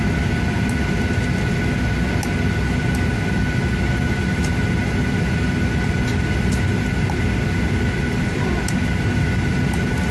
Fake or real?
real